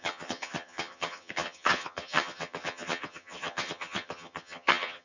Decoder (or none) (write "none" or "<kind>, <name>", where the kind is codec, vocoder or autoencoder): vocoder, HiFi-GAN